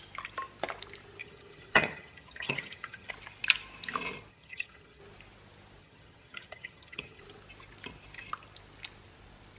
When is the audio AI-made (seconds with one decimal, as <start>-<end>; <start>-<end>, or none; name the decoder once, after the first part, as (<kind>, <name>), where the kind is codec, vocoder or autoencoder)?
1.2-3.1 (vocoder, HiFi-GAN); 4.3-5.0; 5.8-7.2